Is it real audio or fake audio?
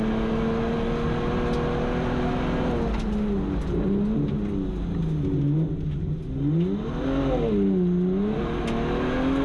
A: real